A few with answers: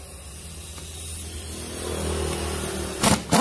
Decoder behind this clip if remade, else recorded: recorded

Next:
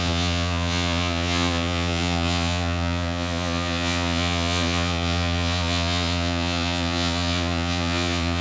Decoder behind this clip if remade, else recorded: remade, vocoder, Vocos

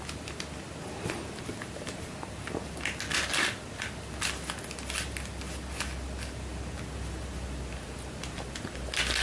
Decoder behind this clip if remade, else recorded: recorded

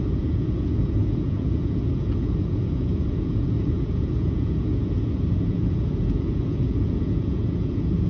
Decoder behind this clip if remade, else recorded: remade, vocoder, Vocos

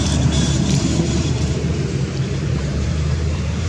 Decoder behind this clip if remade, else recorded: remade, vocoder, BigVGAN v2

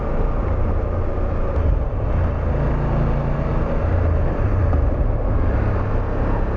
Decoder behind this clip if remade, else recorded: recorded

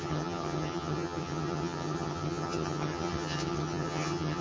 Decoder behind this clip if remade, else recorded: remade, vocoder, HiFi-GAN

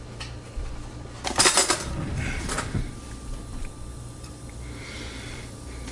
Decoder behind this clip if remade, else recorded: remade, vocoder, BigVGAN v2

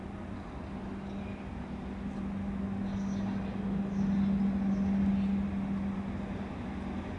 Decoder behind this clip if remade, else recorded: recorded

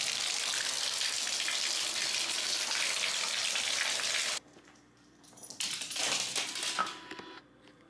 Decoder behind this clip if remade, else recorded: recorded